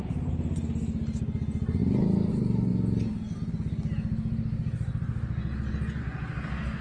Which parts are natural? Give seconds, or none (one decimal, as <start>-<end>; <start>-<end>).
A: 0.0-6.8